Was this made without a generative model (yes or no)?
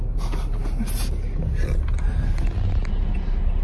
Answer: yes